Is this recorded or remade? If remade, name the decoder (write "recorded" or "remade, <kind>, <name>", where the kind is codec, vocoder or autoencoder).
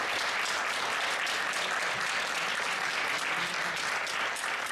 recorded